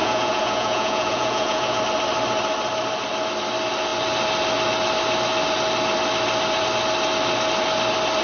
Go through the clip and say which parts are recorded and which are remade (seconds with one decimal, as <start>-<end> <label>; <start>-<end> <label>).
0.0-1.8 remade; 1.8-8.2 recorded